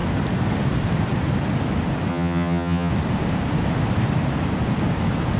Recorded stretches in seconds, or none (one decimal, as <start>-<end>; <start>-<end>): 0.0-2.1; 2.9-5.4

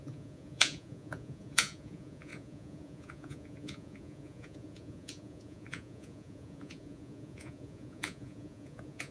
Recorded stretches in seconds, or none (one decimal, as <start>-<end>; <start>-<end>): none

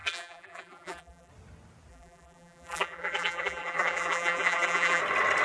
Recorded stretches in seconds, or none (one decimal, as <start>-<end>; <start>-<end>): 1.3-1.9; 5.0-5.4

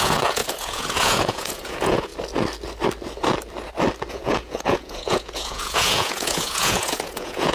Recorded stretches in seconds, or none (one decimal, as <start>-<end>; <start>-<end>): 2.1-4.1